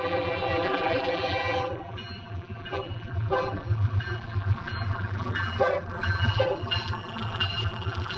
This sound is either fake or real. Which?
fake